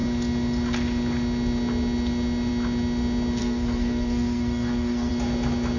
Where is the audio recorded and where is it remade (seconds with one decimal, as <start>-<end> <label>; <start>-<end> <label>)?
0.0-3.4 recorded; 3.4-5.1 remade; 5.1-5.8 recorded